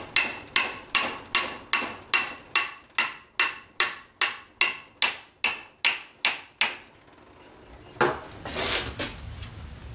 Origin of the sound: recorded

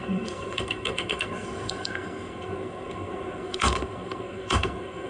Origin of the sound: remade